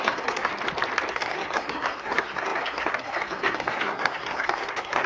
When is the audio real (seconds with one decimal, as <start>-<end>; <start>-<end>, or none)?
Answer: 0.5-1.1